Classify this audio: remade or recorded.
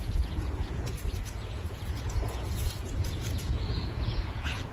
remade